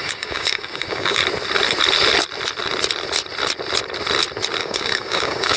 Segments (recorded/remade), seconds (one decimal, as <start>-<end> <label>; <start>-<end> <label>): 0.0-1.2 remade; 1.2-4.6 recorded; 4.6-5.6 remade